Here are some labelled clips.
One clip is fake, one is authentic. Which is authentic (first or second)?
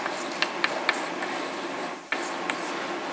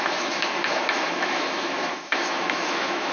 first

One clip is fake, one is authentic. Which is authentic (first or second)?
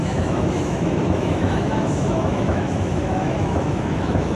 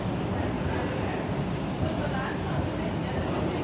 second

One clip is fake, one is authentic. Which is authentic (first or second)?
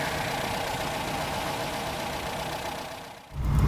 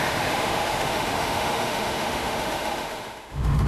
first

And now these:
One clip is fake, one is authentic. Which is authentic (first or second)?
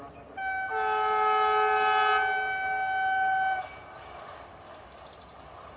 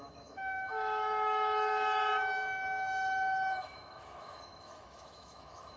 first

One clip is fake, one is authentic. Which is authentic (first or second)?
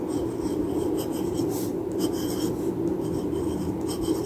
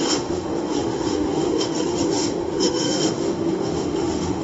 first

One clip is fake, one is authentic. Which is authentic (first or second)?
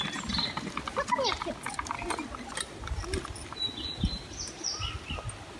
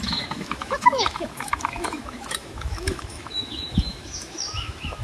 first